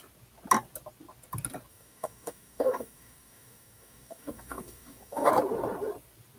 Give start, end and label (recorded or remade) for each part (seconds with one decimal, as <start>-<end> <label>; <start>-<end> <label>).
0.0-1.7 recorded; 1.7-5.3 remade; 5.3-6.4 recorded